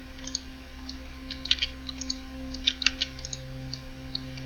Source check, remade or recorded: remade